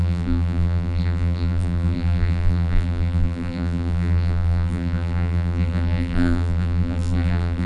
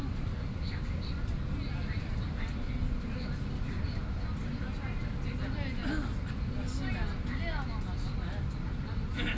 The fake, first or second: first